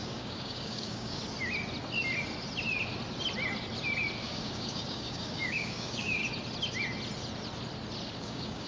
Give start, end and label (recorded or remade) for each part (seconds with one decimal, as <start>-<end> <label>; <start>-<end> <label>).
0.0-1.2 remade; 1.2-4.2 recorded; 4.2-6.2 remade; 6.2-8.2 recorded; 8.2-8.7 remade